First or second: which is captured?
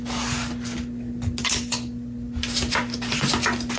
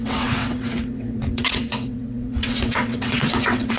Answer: first